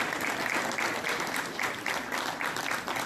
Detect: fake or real real